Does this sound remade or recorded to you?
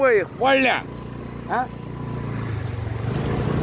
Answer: recorded